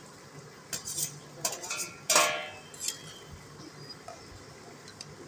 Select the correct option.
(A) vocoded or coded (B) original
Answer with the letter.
B